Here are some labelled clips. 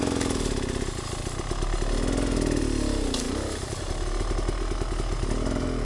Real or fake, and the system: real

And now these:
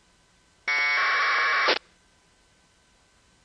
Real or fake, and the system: real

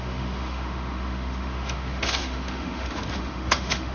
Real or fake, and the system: fake, autoencoder, DAC-VAE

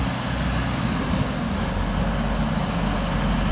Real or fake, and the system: real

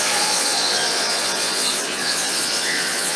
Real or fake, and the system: fake, vocoder, Vocos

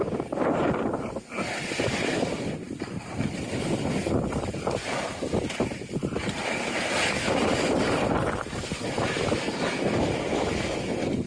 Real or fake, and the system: real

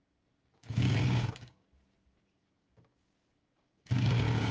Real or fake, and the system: fake, codec, DAC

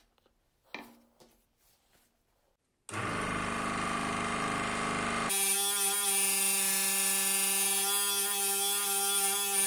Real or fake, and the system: real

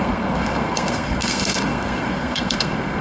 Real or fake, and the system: fake, codec, SNAC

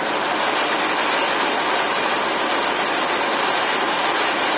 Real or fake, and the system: real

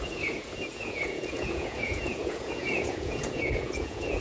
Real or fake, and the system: fake, vocoder, Vocos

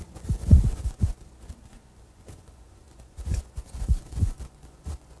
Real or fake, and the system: fake, vocoder, Vocos